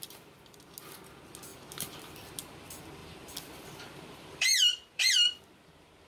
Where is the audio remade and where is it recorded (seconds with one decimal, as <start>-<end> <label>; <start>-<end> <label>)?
0.0-1.5 recorded; 1.5-2.3 remade; 2.3-3.0 recorded; 3.0-5.4 remade; 5.4-6.1 recorded